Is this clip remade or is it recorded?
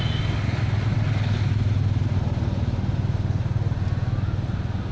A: recorded